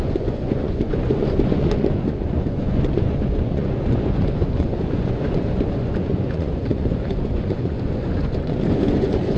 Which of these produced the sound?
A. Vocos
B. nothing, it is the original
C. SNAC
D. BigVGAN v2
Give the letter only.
A